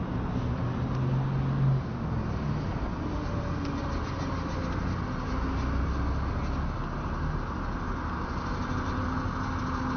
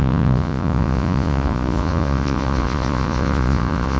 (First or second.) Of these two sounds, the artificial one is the second